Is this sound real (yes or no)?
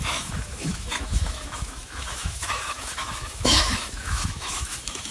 no